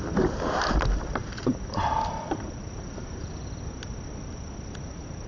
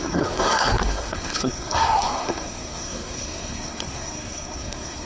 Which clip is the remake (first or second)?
second